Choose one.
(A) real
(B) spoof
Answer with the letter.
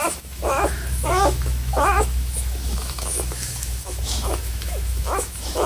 B